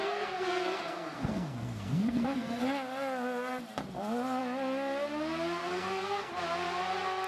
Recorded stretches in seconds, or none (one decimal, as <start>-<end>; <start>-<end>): 2.6-5.6; 6.3-7.3